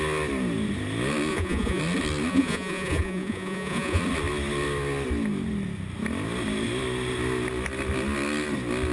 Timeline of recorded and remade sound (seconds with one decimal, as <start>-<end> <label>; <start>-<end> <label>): 0.0-1.3 recorded; 1.3-1.8 remade; 1.8-2.3 recorded; 2.3-4.0 remade; 4.0-8.9 recorded